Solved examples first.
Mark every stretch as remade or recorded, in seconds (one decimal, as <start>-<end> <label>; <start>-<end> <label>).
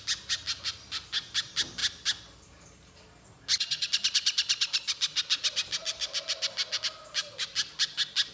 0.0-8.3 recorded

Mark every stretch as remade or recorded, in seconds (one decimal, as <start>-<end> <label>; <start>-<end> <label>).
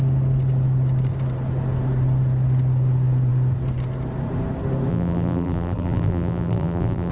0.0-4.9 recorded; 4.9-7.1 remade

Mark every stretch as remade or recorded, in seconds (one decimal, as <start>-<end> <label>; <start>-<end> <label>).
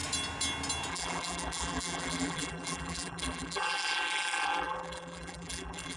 0.0-0.9 recorded; 0.9-6.0 remade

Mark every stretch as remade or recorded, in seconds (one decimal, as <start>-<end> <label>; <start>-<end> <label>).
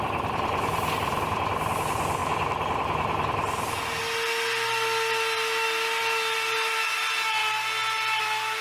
0.0-8.6 recorded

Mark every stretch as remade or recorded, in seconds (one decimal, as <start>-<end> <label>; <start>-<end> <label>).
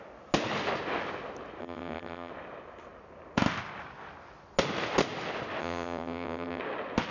0.0-1.6 recorded; 1.6-2.3 remade; 2.3-5.6 recorded; 5.6-6.6 remade; 6.6-7.1 recorded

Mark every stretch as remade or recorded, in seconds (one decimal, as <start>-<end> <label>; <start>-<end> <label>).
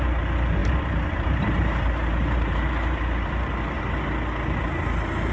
0.0-0.6 recorded; 0.6-3.8 remade; 3.8-5.3 recorded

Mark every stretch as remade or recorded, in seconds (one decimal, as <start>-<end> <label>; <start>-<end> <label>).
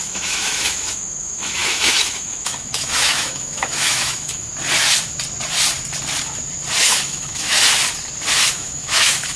0.0-4.5 remade; 4.5-6.8 recorded; 6.8-7.6 remade; 7.6-8.5 recorded; 8.5-9.4 remade